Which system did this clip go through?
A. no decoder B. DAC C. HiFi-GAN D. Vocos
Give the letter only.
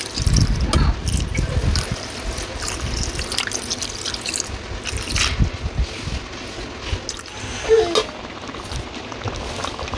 A